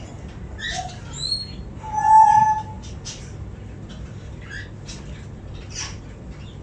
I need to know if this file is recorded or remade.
recorded